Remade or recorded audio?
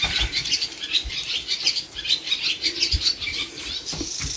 remade